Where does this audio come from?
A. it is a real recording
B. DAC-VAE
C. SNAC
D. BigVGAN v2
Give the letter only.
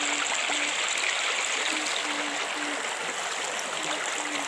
A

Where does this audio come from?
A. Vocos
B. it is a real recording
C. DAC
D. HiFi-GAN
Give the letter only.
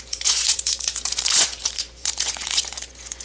A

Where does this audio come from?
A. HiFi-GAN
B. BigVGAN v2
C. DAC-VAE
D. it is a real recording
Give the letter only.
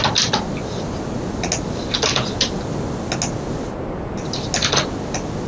D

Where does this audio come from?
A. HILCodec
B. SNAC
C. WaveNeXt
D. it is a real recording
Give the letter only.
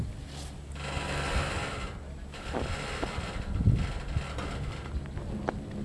D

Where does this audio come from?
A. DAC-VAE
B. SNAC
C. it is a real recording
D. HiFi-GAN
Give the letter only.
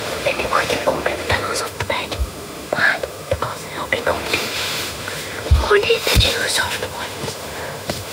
A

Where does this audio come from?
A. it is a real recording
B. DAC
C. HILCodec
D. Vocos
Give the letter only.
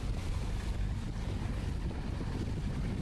A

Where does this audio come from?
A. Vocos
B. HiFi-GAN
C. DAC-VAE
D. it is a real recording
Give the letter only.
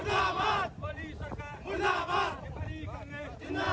D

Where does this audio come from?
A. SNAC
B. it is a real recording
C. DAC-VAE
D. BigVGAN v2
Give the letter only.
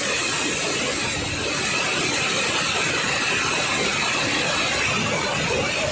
B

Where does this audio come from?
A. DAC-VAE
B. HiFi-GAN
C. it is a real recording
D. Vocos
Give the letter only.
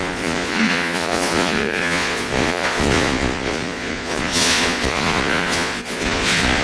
D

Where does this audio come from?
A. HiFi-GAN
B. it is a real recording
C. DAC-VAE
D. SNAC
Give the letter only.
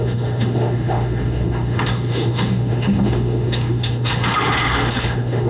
C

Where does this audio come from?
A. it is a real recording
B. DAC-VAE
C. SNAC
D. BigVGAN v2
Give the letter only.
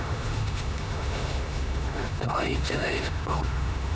B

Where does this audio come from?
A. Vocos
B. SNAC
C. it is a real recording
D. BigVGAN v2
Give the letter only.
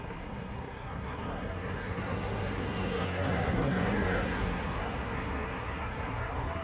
B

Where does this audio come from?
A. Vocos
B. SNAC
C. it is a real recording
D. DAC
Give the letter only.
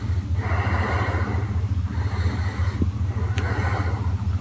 C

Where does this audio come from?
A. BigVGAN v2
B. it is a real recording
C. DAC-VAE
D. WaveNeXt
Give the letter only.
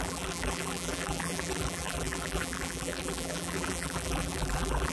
A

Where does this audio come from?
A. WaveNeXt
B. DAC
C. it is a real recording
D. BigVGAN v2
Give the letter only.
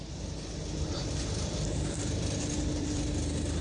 D